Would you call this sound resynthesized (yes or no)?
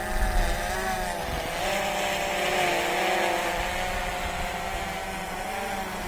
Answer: no